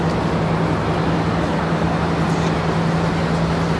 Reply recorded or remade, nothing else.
recorded